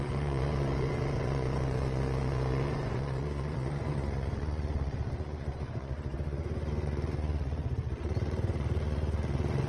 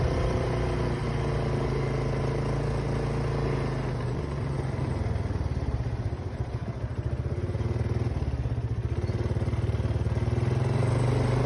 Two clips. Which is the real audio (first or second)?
second